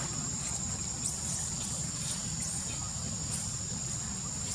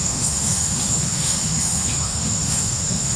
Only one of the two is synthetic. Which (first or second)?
second